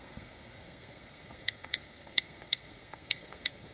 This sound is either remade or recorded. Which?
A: remade